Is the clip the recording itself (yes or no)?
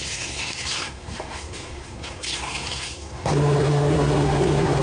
no